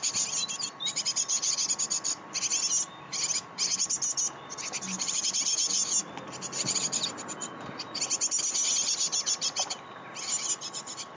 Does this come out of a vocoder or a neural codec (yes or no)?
no